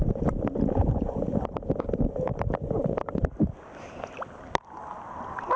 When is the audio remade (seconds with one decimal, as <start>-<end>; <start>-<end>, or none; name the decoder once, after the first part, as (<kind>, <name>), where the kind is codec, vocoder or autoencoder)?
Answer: none